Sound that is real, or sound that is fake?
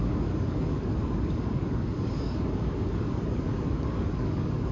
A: fake